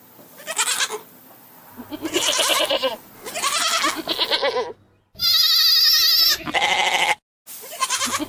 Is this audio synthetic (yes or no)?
no